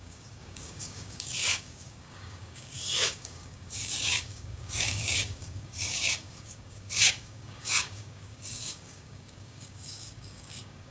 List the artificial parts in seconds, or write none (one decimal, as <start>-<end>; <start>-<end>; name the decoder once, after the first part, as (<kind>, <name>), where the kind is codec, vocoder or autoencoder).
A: 0.0-10.9 (codec, DAC)